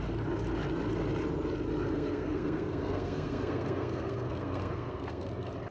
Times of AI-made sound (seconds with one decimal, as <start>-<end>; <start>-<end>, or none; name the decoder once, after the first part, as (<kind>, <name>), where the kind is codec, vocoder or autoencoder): 1.9-5.3 (codec, SNAC)